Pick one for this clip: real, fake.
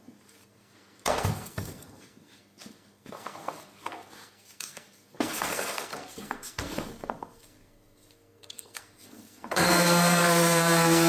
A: fake